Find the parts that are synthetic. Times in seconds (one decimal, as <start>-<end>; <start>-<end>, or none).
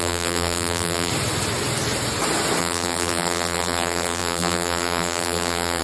0.0-1.1; 2.6-5.8